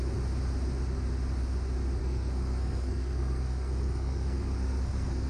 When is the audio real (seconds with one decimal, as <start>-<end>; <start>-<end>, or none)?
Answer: 0.0-2.0